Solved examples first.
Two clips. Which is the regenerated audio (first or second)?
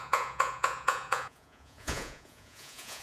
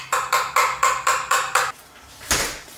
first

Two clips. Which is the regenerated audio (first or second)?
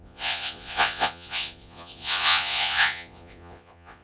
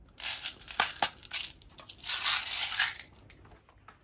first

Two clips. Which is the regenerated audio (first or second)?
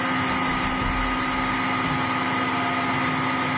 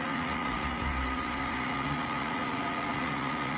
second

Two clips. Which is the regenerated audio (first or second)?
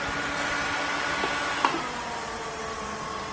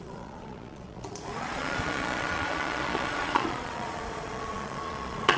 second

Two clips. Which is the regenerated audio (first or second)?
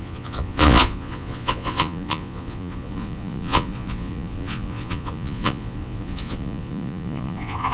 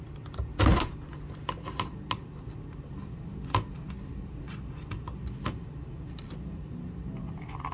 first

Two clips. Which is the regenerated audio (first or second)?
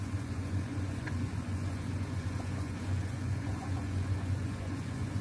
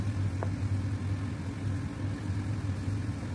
first